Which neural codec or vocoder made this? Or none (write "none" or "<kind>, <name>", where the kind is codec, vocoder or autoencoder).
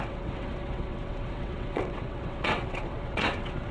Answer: vocoder, WaveNeXt